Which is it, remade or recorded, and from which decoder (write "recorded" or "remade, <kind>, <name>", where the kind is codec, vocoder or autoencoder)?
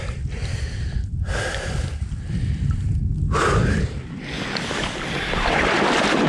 remade, vocoder, BigVGAN v2